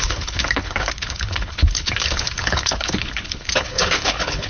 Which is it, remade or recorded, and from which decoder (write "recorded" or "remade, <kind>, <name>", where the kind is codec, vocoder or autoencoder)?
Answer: remade, codec, HILCodec